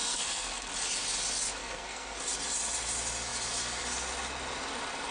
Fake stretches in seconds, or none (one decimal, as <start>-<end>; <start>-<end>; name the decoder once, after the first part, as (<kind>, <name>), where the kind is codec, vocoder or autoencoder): 0.0-0.7 (codec, SNAC); 1.6-2.2